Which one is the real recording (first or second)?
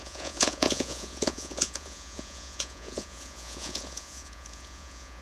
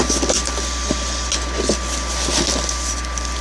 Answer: second